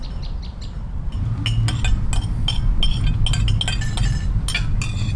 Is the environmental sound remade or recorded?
recorded